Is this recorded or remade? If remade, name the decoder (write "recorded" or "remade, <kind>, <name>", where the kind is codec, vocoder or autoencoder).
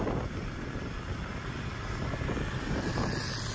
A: recorded